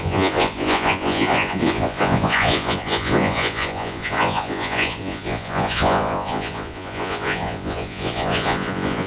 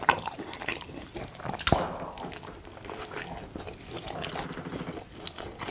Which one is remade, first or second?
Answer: first